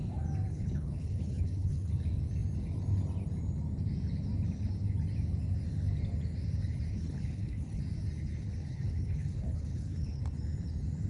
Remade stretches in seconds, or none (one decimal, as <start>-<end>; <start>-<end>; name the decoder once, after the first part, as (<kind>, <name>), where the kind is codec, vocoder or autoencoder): 0.5-1.9 (codec, HILCodec); 6.9-7.8; 8.6-10.2